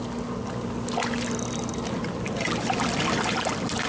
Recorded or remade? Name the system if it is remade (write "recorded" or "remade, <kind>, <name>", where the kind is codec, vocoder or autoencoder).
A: recorded